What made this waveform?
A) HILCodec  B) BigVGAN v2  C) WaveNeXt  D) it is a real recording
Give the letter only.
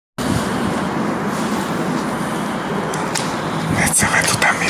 D